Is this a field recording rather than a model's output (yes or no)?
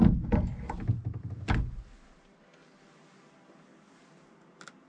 yes